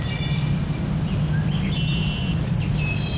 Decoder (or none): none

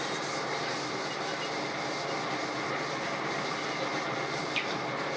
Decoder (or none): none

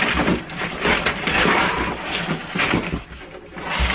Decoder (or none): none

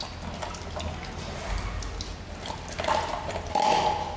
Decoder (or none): none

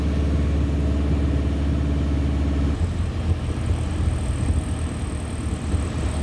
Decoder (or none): none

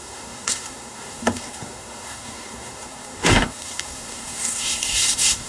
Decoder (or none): codec, SNAC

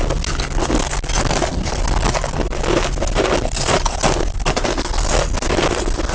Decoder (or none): none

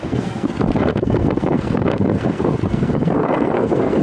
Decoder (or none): codec, SNAC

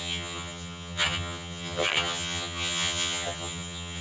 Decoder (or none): vocoder, HiFi-GAN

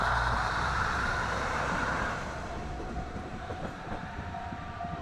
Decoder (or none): vocoder, BigVGAN v2